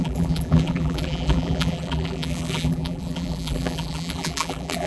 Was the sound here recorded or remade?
remade